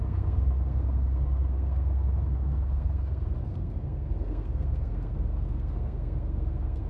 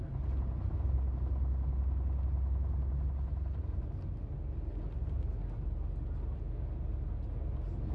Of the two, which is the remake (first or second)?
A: first